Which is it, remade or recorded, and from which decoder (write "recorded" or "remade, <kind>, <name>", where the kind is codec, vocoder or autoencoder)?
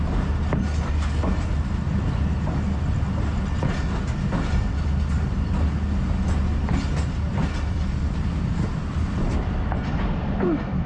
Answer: recorded